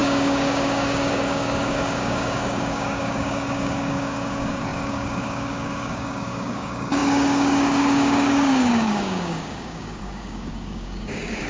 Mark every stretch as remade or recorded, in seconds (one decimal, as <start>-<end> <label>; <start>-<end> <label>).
0.0-11.5 remade